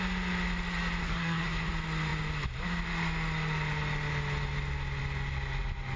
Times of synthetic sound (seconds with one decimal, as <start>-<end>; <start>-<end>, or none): 1.0-1.7